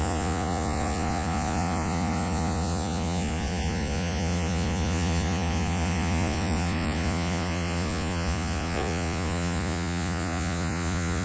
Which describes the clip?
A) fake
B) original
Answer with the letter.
A